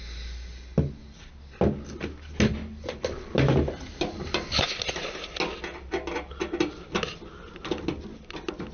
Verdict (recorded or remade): recorded